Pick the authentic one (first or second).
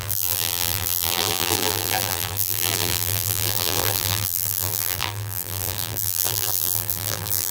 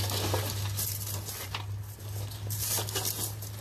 second